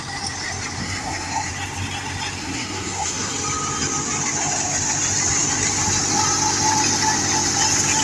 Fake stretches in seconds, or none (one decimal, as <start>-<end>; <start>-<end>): 0.8-1.5; 2.4-3.3